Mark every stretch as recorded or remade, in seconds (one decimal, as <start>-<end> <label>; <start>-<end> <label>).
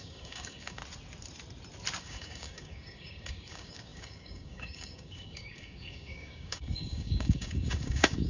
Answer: 0.0-0.8 remade; 0.8-2.0 recorded; 2.0-8.3 remade